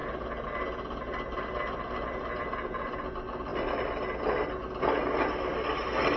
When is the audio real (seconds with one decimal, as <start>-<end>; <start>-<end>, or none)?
0.0-6.2